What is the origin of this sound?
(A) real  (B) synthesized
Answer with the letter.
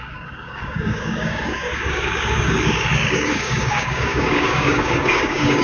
B